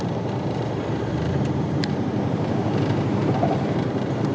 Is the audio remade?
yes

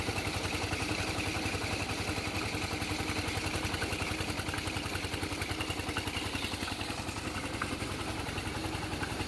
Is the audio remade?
no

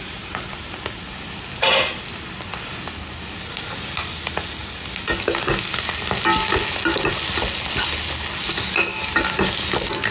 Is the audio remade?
no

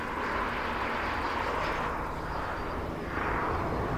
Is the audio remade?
no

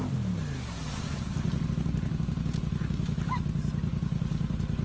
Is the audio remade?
no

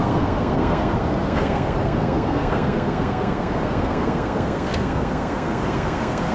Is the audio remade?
yes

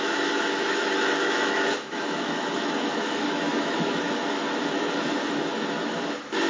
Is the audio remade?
yes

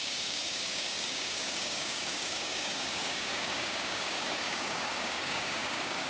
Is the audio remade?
yes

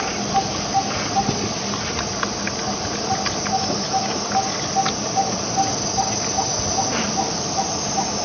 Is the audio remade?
no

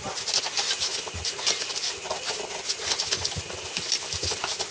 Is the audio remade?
no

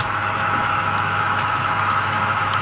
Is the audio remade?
yes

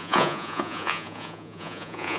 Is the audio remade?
yes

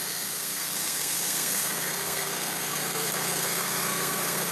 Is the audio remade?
yes